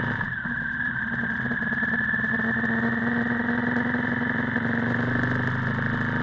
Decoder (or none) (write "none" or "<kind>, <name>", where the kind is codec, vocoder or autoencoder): none